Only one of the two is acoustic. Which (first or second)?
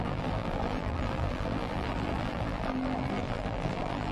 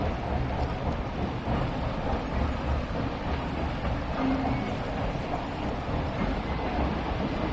second